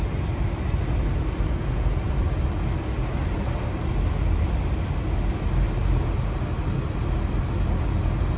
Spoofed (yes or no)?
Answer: no